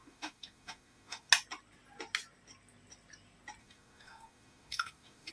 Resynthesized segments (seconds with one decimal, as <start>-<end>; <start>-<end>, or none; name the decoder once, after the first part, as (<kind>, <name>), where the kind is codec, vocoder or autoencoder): 0.0-1.3 (autoencoder, DAC-VAE); 3.6-5.3